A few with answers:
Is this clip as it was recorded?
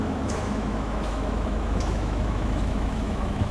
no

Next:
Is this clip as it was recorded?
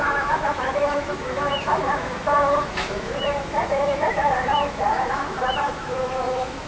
no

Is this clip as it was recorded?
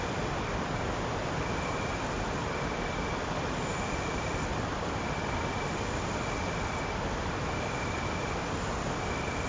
yes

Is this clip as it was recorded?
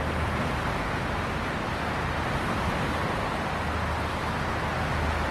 yes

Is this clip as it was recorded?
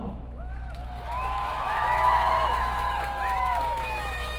no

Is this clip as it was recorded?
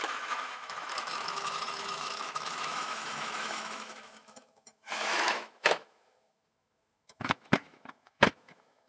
no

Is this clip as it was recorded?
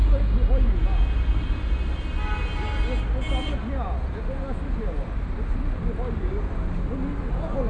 yes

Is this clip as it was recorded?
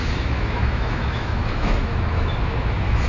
no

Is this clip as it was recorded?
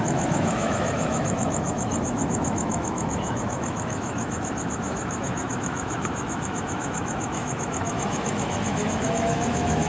no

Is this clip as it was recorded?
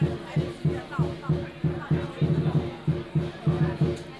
yes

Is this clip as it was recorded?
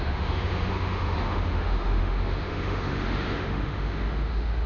no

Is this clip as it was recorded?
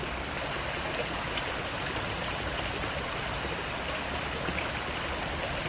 yes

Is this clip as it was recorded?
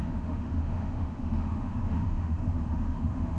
no